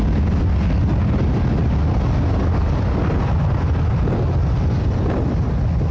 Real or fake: real